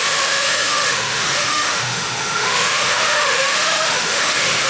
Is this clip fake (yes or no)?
yes